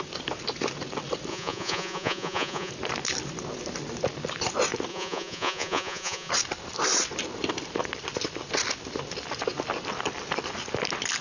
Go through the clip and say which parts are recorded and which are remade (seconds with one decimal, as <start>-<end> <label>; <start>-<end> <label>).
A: 0.0-1.3 recorded; 1.3-2.7 remade; 2.7-4.9 recorded; 4.9-6.3 remade; 6.3-11.2 recorded